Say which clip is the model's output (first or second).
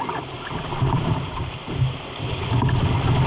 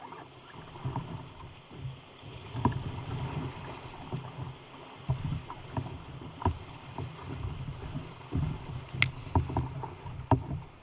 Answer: first